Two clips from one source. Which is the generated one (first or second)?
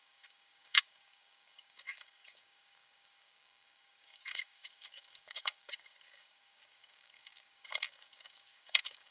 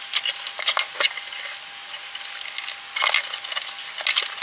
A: first